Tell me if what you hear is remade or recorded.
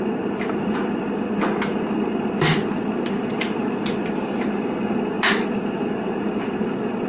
recorded